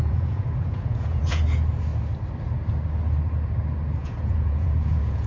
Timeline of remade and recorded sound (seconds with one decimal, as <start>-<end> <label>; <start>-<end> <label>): 0.0-1.4 remade; 1.4-4.0 recorded; 4.0-5.3 remade